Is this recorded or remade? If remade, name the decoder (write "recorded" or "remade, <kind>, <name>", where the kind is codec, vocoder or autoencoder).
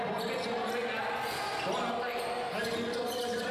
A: recorded